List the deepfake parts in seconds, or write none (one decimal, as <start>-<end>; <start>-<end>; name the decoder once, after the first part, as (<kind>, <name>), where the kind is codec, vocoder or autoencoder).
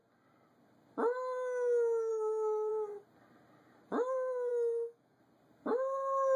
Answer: 2.1-2.7 (autoencoder, DAC-VAE); 4.5-5.2